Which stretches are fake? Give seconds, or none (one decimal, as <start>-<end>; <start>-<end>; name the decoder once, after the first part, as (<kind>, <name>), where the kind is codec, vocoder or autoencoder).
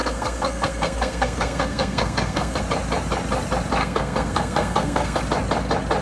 0.0-2.6 (codec, SNAC); 3.8-5.2